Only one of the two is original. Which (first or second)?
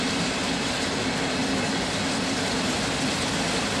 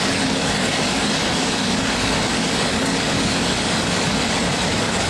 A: first